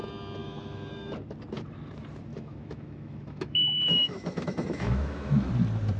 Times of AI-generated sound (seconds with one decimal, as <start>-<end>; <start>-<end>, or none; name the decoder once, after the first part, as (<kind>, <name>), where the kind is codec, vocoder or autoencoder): 0.4-1.1 (autoencoder, DAC-VAE); 2.3-5.5